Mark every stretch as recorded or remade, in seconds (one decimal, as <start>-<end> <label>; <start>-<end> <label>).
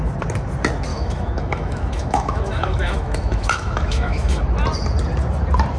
0.0-0.9 recorded; 0.9-4.4 remade; 4.4-5.8 recorded